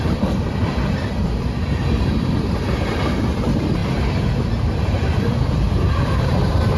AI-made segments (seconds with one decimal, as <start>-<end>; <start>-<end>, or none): 0.0-3.8; 4.8-6.8

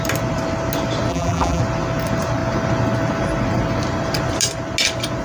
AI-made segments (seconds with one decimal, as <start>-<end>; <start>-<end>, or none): 1.1-1.6

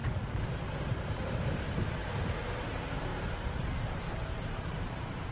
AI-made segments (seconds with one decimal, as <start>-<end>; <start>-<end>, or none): 0.5-2.0; 2.6-5.3

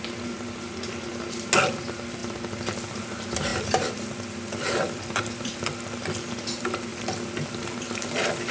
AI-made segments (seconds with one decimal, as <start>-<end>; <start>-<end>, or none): 3.5-5.6

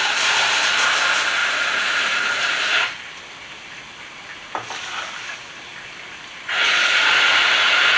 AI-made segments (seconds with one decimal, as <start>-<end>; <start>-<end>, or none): 1.4-3.2

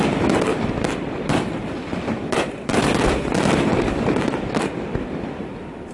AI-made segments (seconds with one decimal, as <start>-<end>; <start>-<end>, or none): 0.0-5.9

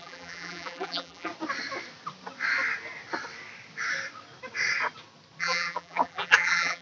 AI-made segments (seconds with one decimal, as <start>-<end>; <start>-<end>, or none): 0.0-1.3; 5.4-6.8